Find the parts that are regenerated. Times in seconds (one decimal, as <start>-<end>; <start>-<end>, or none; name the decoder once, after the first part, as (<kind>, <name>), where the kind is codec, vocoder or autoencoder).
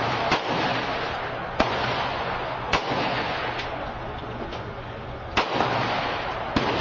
1.4-5.3 (vocoder, Vocos)